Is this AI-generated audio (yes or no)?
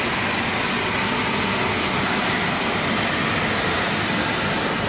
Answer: no